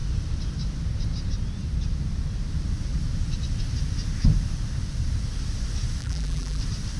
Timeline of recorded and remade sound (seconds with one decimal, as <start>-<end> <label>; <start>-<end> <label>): 0.0-6.0 recorded; 6.0-6.6 remade; 6.6-7.0 recorded